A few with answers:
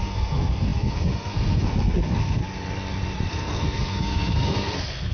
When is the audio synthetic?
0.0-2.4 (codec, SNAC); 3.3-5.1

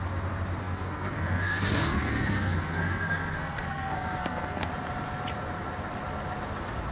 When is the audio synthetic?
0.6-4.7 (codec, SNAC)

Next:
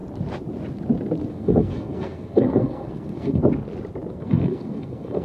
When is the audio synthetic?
1.3-3.4 (codec, SNAC); 4.1-5.2

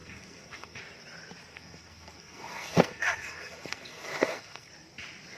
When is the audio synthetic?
0.0-0.8 (codec, SNAC); 1.5-4.7

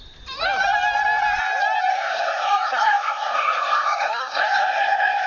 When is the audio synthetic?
1.9-5.3 (codec, SNAC)

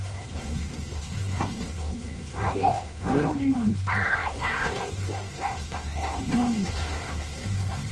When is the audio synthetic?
0.0-7.9 (codec, SNAC)

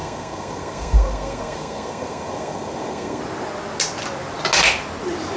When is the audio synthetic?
0.0-3.2 (codec, SNAC)